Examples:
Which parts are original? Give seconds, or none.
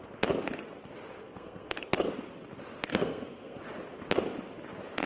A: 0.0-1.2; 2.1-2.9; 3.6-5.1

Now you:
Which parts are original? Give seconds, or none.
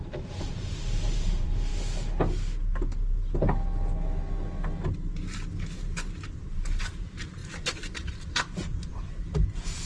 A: 1.7-6.3